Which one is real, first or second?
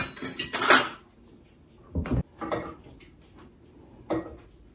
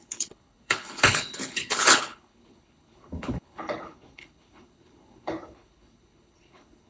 first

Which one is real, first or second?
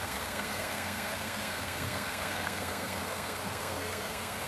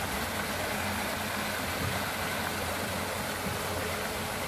second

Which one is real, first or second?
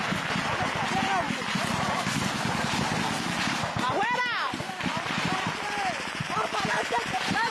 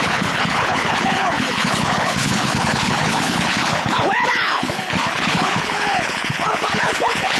first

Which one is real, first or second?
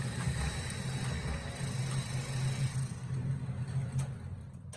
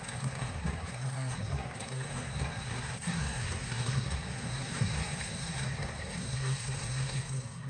first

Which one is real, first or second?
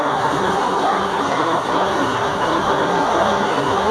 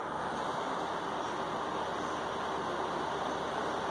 second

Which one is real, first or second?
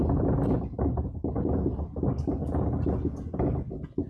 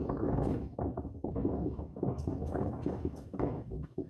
first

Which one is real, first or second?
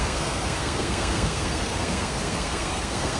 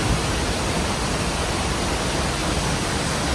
second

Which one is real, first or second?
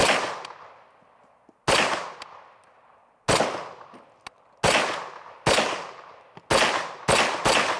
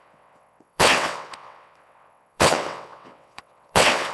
first